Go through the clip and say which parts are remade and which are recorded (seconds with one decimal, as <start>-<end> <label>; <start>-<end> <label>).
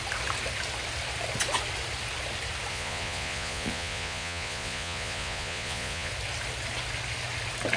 0.0-2.7 recorded; 2.7-6.1 remade; 6.1-7.8 recorded